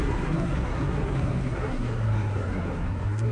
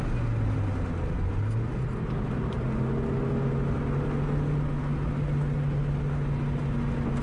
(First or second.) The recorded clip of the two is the second